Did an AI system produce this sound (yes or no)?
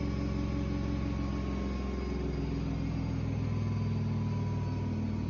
no